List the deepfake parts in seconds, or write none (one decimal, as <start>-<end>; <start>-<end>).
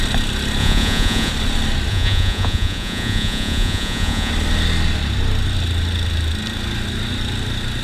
0.6-1.3; 1.9-4.3